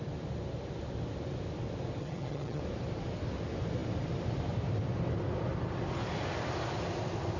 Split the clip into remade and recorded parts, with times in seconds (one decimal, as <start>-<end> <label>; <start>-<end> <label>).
0.0-2.0 recorded; 2.0-2.6 remade; 2.6-7.4 recorded